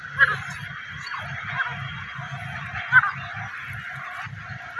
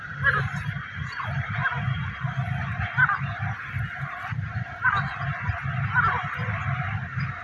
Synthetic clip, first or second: second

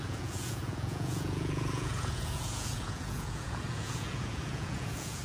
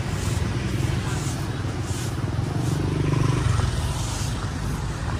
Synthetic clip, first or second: first